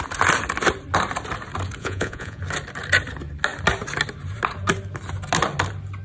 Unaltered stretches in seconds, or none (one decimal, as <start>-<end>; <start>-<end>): 0.0-1.8; 2.4-6.0